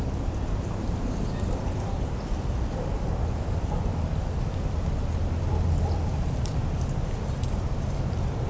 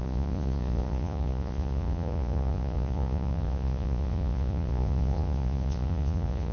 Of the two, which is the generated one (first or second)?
second